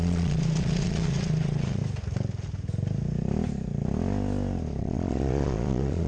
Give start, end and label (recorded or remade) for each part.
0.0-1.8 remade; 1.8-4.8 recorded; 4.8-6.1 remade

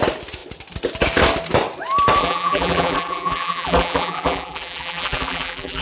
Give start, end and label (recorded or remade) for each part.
0.0-2.2 recorded; 2.2-5.8 remade

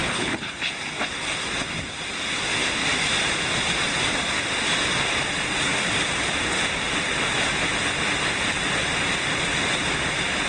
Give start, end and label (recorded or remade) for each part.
0.0-0.7 remade; 0.7-10.5 recorded

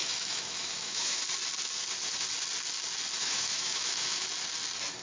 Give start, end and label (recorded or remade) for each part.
0.0-1.2 remade; 1.2-3.2 recorded; 3.2-4.2 remade; 4.2-5.0 recorded

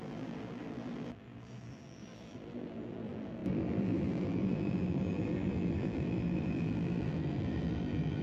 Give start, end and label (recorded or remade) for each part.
0.0-8.2 remade

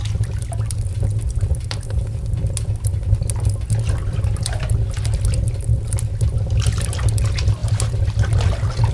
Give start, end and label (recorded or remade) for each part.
0.0-8.9 recorded

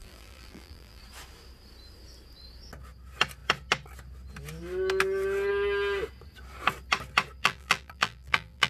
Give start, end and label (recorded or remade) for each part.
0.0-1.0 remade; 1.0-7.4 recorded; 7.4-8.7 remade